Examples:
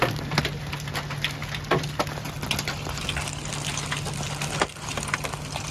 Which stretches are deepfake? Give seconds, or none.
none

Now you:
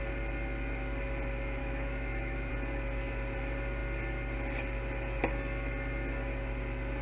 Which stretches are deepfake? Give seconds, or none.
1.6-2.5 (autoencoder, DAC-VAE)

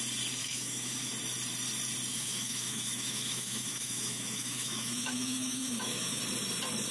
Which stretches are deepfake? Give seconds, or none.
0.4-1.1 (autoencoder, DAC-VAE); 2.1-6.2

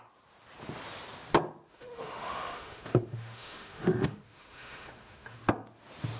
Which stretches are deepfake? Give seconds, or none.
1.7-5.4 (autoencoder, DAC-VAE)

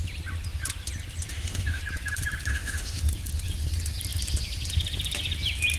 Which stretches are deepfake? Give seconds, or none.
1.3-1.8 (autoencoder, DAC-VAE); 2.5-3.0

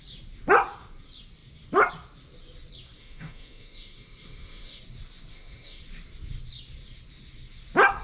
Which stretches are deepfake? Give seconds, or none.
3.0-4.8 (autoencoder, DAC-VAE); 5.3-5.8

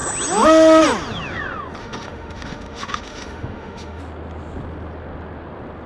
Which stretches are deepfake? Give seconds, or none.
1.8-4.0 (autoencoder, DAC-VAE)